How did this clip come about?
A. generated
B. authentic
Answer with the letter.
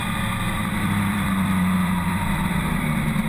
A